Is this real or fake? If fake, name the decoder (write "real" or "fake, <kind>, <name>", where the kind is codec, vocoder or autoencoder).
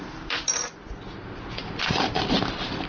real